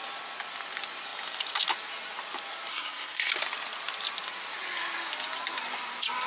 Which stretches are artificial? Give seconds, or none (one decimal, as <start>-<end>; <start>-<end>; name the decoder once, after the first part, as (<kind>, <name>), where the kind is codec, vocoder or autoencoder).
2.7-3.3 (codec, SNAC)